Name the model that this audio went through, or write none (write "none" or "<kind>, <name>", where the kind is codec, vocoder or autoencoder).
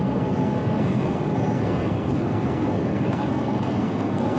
codec, SNAC